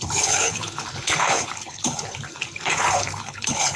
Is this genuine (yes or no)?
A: no